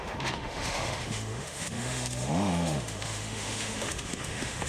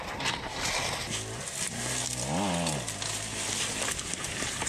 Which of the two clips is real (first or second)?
second